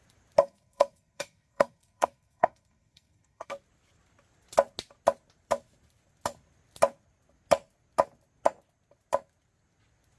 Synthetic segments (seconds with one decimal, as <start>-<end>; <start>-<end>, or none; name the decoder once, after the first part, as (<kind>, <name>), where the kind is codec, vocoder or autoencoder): 0.4-3.5 (codec, SNAC)

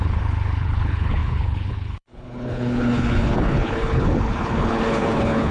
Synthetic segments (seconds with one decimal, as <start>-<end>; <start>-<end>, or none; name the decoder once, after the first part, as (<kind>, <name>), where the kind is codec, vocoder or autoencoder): 0.0-5.5 (codec, HILCodec)

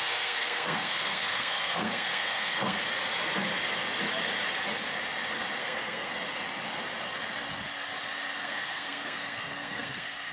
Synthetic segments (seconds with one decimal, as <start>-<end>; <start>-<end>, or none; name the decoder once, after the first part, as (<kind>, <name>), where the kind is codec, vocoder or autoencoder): 0.0-2.8 (codec, SNAC); 5.6-6.1; 8.4-10.3

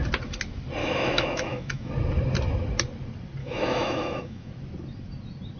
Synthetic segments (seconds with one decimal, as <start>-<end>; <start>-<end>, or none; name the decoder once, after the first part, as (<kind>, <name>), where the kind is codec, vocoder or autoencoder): 0.8-1.9 (autoencoder, DAC-VAE); 3.4-4.5

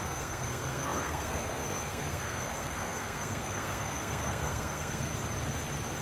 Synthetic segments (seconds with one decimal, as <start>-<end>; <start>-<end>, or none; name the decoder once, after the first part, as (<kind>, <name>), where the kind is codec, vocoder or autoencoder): 0.0-5.1 (codec, SNAC)

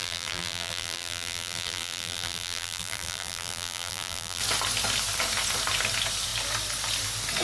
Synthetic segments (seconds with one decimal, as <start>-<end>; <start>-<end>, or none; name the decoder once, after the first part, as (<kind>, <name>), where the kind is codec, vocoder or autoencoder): 0.0-4.4 (vocoder, BigVGAN v2)

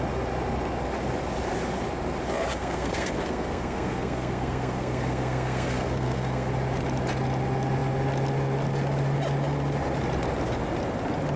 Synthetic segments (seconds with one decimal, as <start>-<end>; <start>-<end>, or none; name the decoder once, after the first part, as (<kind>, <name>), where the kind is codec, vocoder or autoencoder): 2.5-6.5 (codec, SNAC)